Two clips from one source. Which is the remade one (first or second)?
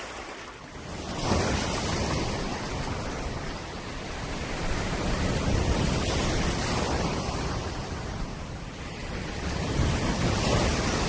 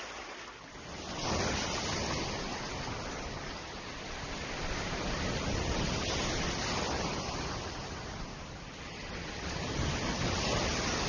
first